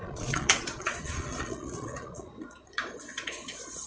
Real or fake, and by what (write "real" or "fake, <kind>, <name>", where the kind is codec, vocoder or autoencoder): fake, vocoder, Vocos